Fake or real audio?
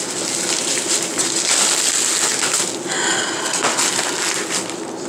real